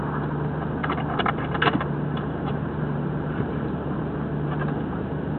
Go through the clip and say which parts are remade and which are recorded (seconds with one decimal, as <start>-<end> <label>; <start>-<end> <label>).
0.0-0.8 recorded; 0.8-4.0 remade; 4.0-5.4 recorded